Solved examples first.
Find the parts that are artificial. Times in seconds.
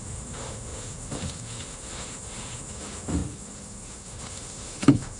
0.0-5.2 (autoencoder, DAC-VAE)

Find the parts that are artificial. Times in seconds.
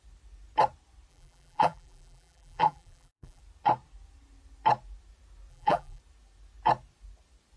1.1-3.4 (vocoder, BigVGAN v2); 5.5-6.0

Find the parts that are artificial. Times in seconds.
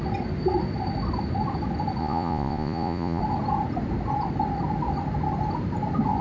2.0-3.2 (vocoder, Vocos)